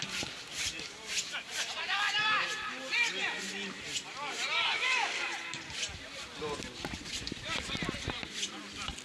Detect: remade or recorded remade